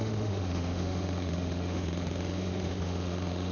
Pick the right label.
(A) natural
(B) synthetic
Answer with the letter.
B